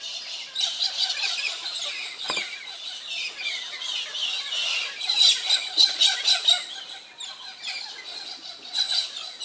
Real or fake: real